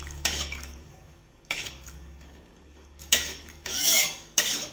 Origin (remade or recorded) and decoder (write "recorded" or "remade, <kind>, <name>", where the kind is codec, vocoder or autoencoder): remade, codec, DAC